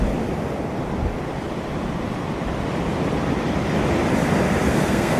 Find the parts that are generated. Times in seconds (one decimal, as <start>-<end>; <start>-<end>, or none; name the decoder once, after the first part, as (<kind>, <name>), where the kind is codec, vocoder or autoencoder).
4.7-5.2 (codec, SNAC)

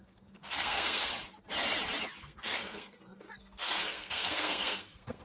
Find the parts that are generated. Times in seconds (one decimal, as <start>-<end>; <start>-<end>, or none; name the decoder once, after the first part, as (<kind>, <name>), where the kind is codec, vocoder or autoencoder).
0.0-1.1 (codec, SNAC); 2.2-5.2

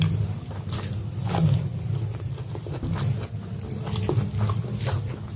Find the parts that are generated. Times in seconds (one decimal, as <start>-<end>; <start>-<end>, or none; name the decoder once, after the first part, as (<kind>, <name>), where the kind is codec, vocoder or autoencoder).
none

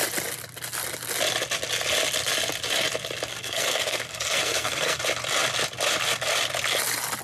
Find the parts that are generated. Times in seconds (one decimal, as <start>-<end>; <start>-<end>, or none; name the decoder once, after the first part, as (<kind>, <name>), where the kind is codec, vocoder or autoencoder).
3.3-5.0 (codec, SNAC)

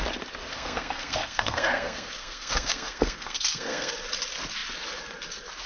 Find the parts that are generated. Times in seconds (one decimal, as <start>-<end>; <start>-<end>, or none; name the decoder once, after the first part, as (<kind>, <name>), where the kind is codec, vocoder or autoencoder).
0.5-3.9 (codec, SNAC)

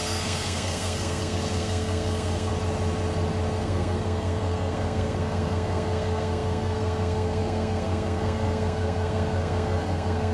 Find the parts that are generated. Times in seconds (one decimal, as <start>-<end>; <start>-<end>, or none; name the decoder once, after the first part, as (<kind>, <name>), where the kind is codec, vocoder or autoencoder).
0.0-2.5 (codec, SNAC); 3.6-10.3

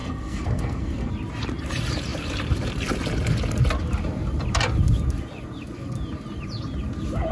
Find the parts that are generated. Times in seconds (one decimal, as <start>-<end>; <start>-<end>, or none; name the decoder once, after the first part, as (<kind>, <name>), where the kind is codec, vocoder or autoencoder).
0.0-1.1 (codec, SNAC)